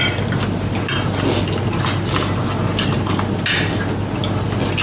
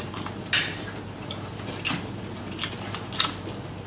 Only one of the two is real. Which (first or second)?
first